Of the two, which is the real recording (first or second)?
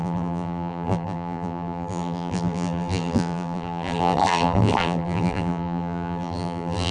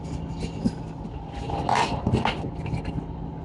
second